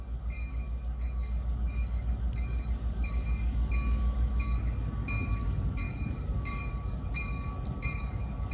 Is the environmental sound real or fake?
fake